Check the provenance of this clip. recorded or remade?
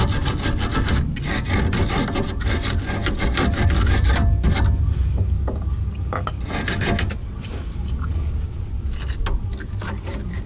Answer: recorded